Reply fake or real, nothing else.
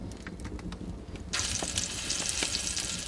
real